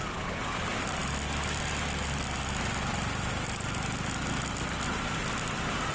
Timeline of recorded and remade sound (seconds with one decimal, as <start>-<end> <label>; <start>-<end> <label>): 0.0-5.9 recorded